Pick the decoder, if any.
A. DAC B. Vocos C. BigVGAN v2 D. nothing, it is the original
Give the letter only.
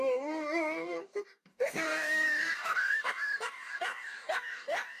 A